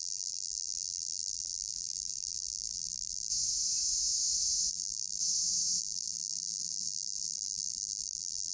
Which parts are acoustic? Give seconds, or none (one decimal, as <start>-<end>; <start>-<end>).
3.3-4.7; 5.2-5.8